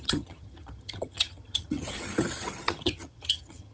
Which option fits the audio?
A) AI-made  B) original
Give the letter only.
A